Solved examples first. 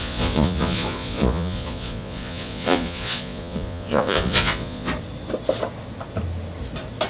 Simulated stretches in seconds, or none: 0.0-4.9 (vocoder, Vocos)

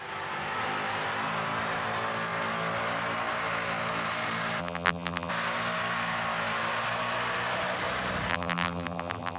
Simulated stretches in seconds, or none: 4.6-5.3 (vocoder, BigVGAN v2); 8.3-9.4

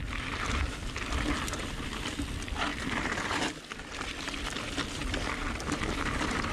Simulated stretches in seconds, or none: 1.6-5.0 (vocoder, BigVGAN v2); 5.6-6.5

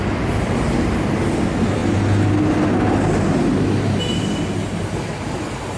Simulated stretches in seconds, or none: none

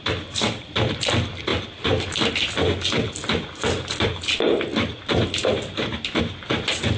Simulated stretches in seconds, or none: none

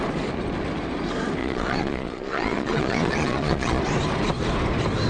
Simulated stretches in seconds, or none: 1.4-3.8 (vocoder, Vocos)

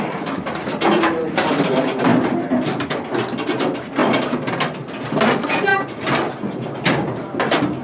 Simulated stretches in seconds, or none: none